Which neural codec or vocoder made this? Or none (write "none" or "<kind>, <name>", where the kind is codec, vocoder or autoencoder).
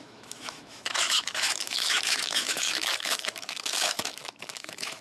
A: autoencoder, DAC-VAE